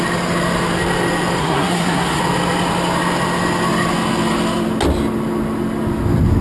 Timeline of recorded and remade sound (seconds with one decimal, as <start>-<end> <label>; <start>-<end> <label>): 0.0-1.4 recorded; 1.4-2.2 remade; 2.2-6.4 recorded